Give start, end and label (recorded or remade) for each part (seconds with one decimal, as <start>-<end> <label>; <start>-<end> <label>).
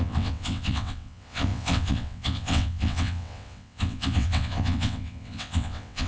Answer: 0.0-6.1 remade